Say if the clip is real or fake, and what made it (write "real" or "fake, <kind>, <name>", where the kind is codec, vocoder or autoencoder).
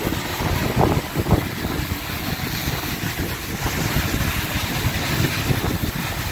real